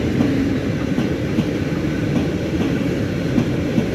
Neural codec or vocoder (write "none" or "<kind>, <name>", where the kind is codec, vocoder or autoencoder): vocoder, BigVGAN v2